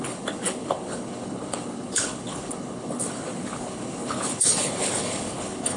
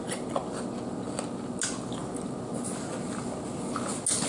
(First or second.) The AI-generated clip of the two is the first